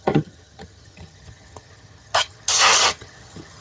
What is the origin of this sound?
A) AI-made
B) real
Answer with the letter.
A